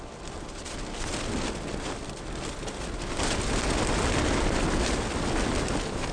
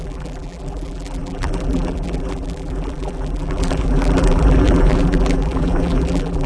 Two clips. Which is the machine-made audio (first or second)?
second